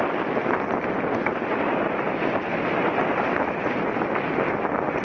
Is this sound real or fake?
real